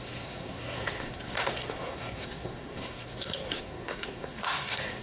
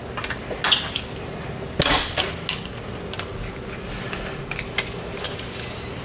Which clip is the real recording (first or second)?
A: second